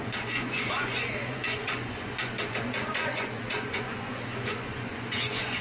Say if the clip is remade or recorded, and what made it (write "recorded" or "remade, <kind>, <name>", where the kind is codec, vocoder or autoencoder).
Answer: remade, vocoder, Vocos